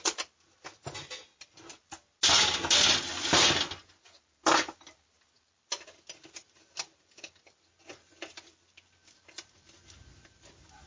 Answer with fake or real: real